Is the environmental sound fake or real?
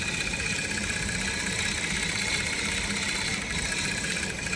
fake